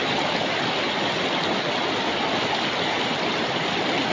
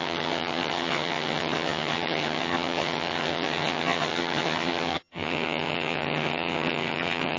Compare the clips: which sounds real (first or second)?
first